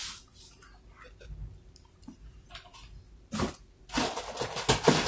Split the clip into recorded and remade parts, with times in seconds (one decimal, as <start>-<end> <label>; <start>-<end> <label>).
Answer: 0.0-5.1 recorded